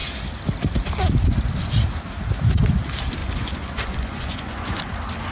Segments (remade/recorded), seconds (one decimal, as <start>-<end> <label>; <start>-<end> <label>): 0.0-3.2 recorded; 3.2-4.8 remade; 4.8-5.3 recorded

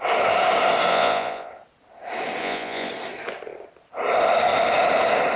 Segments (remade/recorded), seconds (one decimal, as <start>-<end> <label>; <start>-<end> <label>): 0.0-0.9 recorded; 0.9-1.5 remade; 1.5-2.4 recorded; 2.4-2.9 remade; 2.9-5.4 recorded

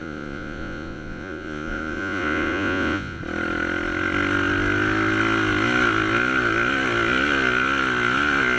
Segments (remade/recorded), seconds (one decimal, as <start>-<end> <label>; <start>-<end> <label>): 0.0-3.2 remade; 3.2-8.6 recorded

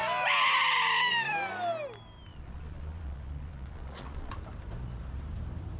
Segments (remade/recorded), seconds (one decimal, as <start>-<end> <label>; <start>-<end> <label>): 0.0-2.3 recorded; 2.3-4.3 remade; 4.3-5.8 recorded

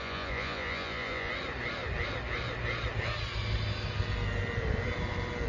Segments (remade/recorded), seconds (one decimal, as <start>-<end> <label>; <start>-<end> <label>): 0.0-1.3 remade; 1.3-5.5 recorded